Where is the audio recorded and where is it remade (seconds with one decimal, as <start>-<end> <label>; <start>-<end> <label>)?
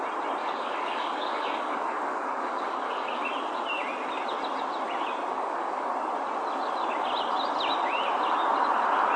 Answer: 0.0-0.4 recorded; 0.4-3.2 remade; 3.2-5.3 recorded; 5.3-5.9 remade; 5.9-9.2 recorded